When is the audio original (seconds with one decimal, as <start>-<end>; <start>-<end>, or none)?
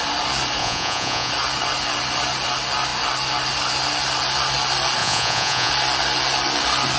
0.0-0.6; 1.3-5.0; 5.7-7.0